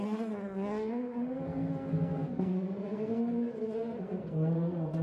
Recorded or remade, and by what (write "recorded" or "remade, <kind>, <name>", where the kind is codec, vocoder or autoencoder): remade, codec, SNAC